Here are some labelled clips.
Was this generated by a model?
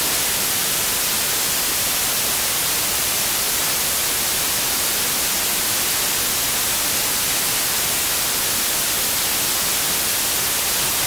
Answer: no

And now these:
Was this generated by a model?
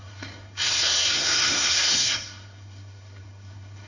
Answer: yes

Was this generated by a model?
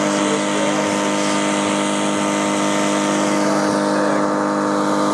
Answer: no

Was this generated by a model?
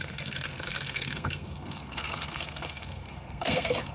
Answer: yes